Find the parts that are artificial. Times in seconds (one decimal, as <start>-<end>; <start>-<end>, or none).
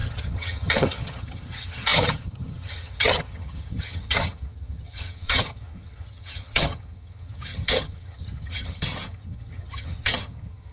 0.0-10.7